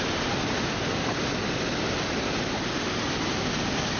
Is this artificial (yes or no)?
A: no